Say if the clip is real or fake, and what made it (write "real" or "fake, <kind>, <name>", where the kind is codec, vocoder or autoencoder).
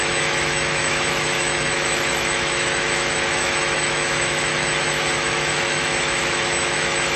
fake, autoencoder, DAC-VAE